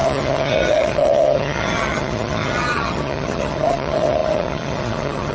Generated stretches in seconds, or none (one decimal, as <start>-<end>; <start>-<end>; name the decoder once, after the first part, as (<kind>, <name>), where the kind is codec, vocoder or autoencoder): 0.0-5.3 (vocoder, HiFi-GAN)